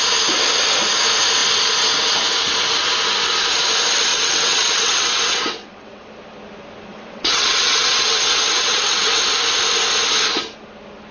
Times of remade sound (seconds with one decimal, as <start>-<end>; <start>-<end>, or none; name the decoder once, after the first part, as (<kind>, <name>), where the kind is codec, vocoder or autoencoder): 4.1-6.1 (vocoder, WaveNeXt); 6.9-9.1